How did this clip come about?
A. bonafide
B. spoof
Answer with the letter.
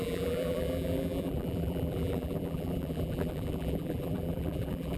B